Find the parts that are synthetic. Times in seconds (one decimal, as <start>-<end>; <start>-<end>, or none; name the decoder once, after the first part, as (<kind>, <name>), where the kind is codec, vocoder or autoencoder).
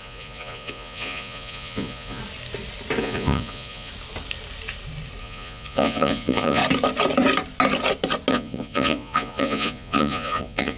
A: 0.0-2.2 (vocoder, Vocos); 3.0-3.9; 5.2-6.6; 8.3-10.8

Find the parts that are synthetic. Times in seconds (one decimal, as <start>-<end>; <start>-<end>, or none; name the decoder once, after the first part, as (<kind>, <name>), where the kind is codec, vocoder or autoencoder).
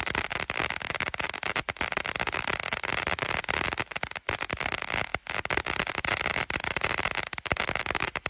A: none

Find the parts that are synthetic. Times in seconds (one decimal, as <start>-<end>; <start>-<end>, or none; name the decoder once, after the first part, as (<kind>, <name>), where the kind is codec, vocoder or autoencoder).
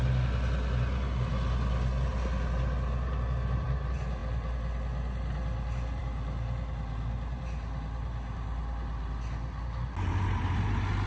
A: none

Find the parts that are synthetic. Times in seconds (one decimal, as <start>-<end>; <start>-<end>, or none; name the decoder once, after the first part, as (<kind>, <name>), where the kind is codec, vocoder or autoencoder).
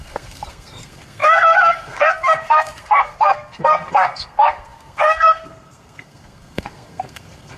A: 0.0-7.6 (codec, SNAC)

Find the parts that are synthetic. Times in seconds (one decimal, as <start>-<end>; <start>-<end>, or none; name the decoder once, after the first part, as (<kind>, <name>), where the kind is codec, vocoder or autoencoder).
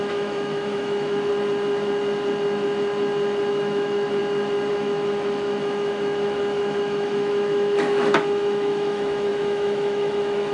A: 0.0-1.3 (autoencoder, DAC-VAE); 3.5-4.2; 4.7-10.5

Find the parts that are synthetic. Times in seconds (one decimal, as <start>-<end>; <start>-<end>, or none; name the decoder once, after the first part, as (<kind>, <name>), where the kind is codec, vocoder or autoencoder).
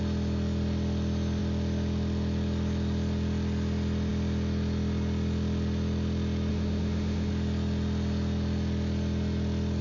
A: 6.5-7.3 (autoencoder, DAC-VAE)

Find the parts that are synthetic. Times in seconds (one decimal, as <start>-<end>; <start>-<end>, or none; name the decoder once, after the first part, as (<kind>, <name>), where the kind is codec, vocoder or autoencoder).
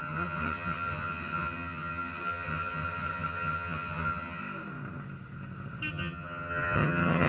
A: 0.0-4.4 (vocoder, HiFi-GAN); 5.9-7.3